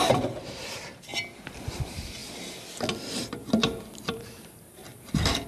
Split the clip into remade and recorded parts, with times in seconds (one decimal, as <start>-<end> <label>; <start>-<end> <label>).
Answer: 0.0-1.1 remade; 1.1-1.8 recorded; 1.8-2.2 remade; 2.2-4.1 recorded; 4.1-4.8 remade; 4.8-5.5 recorded